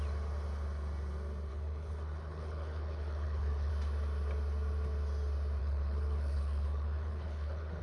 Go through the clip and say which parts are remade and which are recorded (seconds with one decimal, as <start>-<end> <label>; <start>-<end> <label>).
0.0-1.5 recorded; 1.5-3.7 remade; 3.7-5.6 recorded; 5.6-7.8 remade